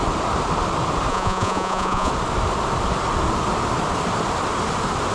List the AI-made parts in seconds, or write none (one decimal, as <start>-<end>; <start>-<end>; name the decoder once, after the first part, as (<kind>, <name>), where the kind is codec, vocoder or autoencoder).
1.1-2.1 (vocoder, Vocos)